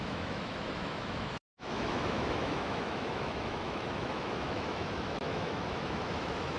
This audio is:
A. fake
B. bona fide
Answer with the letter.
A